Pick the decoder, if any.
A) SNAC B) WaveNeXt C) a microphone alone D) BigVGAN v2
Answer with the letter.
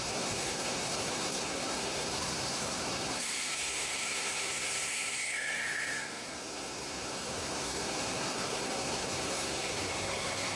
A